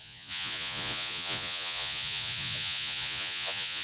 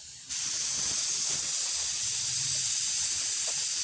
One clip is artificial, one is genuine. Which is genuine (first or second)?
second